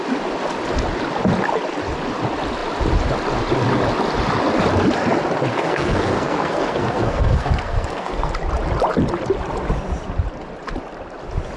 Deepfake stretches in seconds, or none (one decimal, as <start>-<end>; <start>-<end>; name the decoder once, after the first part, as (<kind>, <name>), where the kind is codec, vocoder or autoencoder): 5.5-8.3 (codec, SNAC)